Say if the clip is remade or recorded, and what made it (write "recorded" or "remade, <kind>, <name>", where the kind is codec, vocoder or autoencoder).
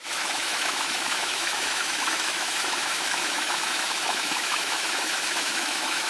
remade, autoencoder, DAC-VAE